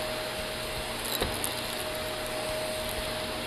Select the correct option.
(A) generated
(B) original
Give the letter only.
B